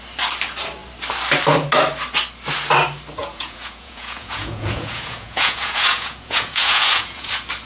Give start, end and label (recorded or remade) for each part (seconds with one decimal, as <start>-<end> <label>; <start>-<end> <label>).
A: 0.0-3.2 recorded; 3.2-7.3 remade; 7.3-7.7 recorded